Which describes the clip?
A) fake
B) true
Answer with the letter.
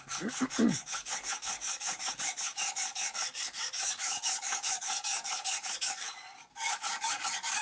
A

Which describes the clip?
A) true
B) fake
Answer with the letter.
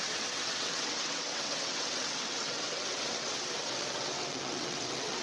B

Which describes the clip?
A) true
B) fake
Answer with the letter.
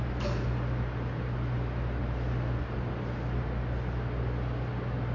A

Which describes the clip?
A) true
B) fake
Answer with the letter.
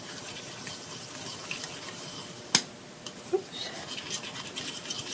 A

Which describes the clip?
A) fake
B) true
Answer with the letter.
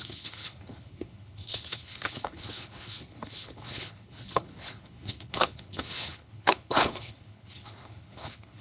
A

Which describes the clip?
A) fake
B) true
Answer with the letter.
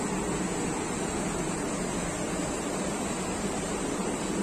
B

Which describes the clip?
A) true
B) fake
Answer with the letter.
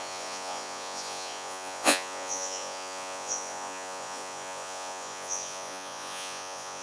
B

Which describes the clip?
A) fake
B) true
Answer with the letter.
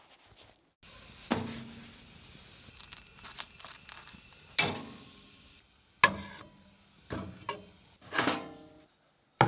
B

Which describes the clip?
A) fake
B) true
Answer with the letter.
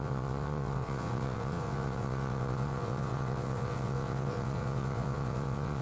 A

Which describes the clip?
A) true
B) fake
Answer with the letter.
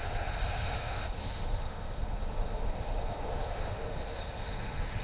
B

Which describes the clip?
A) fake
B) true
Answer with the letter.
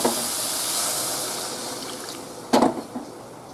B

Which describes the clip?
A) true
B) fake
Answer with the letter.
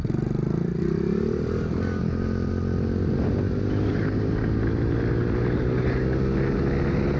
A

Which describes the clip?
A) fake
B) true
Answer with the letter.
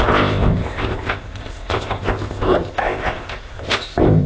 A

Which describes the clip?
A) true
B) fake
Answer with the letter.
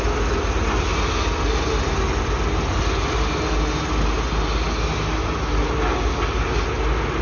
A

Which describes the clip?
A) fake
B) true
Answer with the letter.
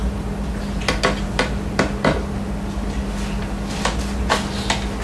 B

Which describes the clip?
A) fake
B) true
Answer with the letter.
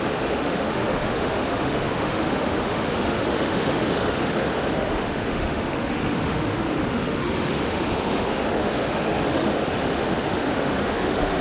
A